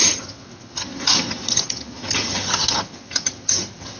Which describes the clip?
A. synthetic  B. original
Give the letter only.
A